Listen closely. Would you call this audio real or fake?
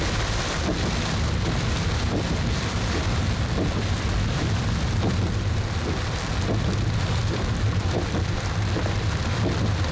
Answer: fake